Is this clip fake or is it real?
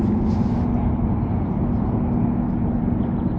real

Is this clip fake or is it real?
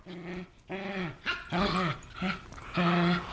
real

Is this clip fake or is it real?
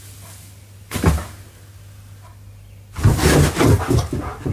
real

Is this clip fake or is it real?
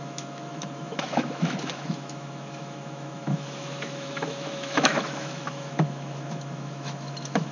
fake